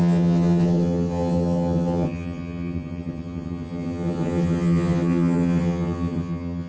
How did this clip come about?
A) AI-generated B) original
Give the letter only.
A